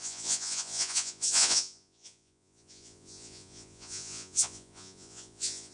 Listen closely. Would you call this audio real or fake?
fake